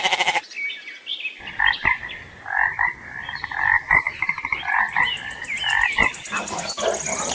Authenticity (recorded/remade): recorded